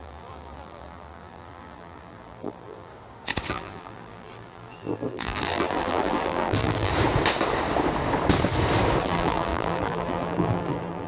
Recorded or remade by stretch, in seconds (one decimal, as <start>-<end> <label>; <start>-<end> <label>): 0.0-2.9 remade; 2.9-3.5 recorded; 3.5-6.9 remade; 6.9-9.0 recorded; 9.0-11.1 remade